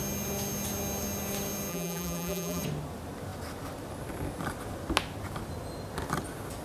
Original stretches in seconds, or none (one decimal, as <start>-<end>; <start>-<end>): 0.0-1.7; 2.6-6.6